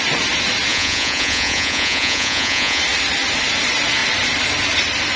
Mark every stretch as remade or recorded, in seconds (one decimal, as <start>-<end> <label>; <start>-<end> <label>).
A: 0.0-0.7 recorded; 0.7-2.8 remade; 2.8-5.2 recorded